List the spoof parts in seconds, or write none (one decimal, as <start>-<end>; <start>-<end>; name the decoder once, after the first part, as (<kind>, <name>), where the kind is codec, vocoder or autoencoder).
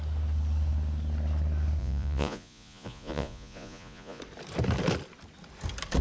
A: 1.8-4.2 (vocoder, Vocos)